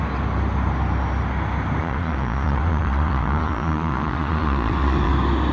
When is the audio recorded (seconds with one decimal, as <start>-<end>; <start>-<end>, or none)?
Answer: 0.0-1.8; 5.1-5.5